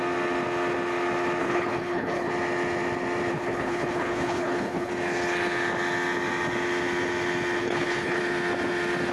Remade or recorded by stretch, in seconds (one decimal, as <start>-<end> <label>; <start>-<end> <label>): 0.0-1.4 recorded; 1.4-2.3 remade; 2.3-3.3 recorded; 3.3-4.9 remade; 4.9-7.6 recorded; 7.6-8.2 remade; 8.2-9.1 recorded